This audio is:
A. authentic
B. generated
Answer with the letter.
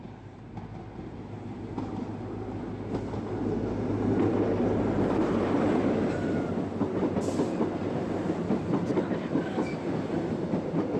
A